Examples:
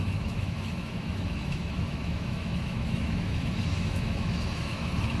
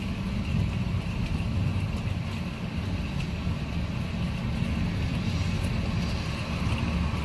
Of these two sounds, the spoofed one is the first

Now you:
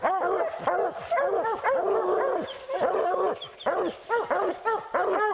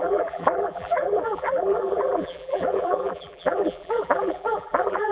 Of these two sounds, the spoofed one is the second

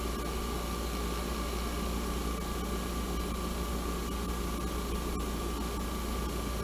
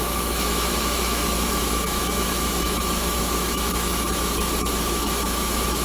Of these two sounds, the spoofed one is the second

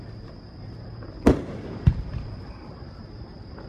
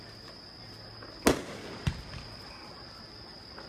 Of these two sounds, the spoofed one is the first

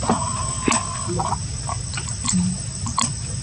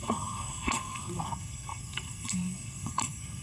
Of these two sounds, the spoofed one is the second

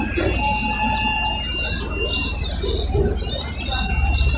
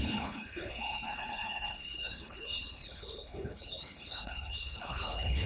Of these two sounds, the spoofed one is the second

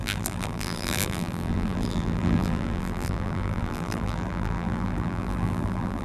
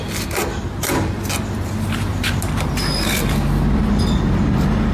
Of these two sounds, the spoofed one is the first